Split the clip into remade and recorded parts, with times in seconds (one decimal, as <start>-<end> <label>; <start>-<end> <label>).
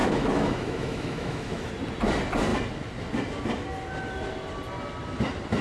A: 0.0-1.7 remade; 1.7-5.6 recorded